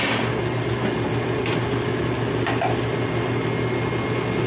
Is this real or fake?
real